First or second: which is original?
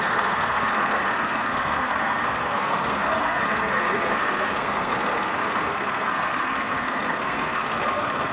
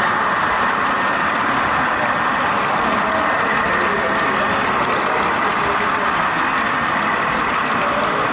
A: second